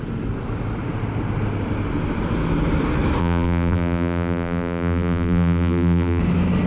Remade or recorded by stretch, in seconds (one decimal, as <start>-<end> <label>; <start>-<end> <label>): 0.0-3.2 recorded; 3.2-6.2 remade; 6.2-6.7 recorded